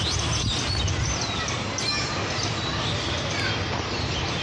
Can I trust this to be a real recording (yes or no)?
yes